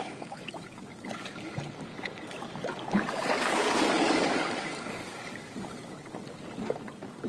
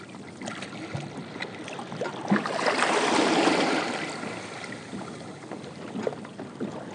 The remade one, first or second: first